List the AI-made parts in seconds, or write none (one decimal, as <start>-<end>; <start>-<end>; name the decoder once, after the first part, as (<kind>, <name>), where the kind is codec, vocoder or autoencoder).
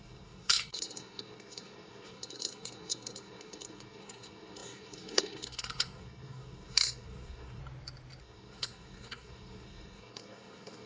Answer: 0.0-7.6 (codec, SNAC); 8.2-10.9